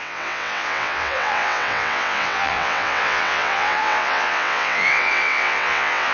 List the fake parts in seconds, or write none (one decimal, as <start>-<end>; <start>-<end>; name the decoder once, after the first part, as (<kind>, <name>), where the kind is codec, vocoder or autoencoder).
0.0-6.1 (vocoder, WaveNeXt)